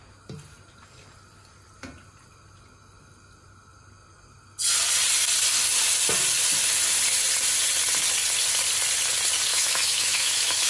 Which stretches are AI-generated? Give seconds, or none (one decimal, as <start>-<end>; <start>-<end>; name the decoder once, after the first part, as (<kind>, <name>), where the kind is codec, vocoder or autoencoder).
9.5-10.7 (autoencoder, DAC-VAE)

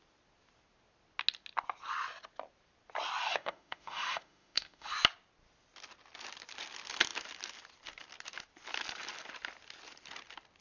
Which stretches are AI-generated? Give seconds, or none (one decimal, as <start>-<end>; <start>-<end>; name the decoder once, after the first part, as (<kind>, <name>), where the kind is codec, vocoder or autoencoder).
3.2-4.9 (autoencoder, DAC-VAE)